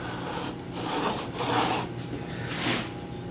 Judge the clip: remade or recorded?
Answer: recorded